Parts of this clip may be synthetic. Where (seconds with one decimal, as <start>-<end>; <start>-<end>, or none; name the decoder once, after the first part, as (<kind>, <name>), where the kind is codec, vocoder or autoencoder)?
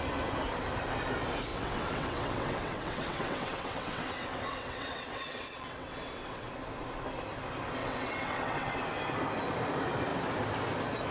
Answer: 1.5-6.5 (vocoder, WaveNeXt); 7.8-8.7